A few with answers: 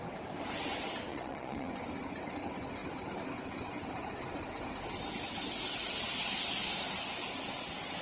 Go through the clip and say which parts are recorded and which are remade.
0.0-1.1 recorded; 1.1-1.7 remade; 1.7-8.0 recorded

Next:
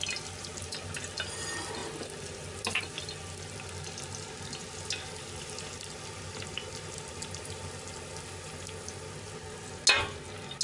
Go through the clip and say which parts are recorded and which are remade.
0.0-10.6 recorded

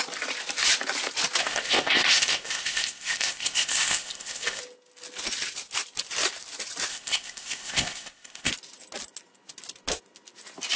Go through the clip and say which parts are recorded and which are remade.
0.0-1.4 recorded; 1.4-4.6 remade; 4.6-6.9 recorded; 6.9-8.5 remade; 8.5-10.8 recorded

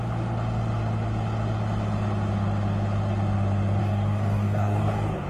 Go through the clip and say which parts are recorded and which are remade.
0.0-3.8 recorded; 3.8-5.3 remade

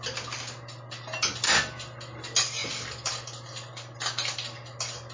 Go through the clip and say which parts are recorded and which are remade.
0.0-5.1 recorded